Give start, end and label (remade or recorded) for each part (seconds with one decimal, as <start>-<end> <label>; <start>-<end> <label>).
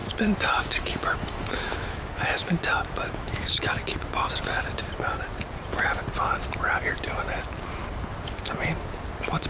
0.0-4.3 remade; 4.3-9.5 recorded